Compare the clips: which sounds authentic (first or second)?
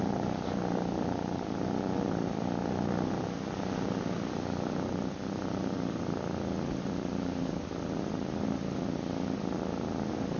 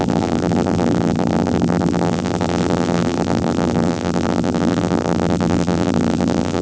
first